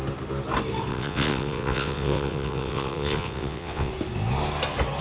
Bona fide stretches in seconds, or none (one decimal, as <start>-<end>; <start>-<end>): 0.0-0.9; 3.9-5.0